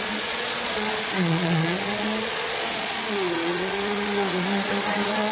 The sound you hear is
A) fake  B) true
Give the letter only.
A